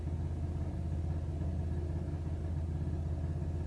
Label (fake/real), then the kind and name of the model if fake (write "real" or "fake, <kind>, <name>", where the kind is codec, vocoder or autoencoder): real